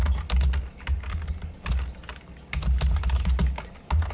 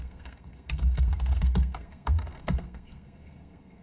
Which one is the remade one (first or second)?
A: second